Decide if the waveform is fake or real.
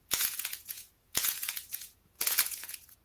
fake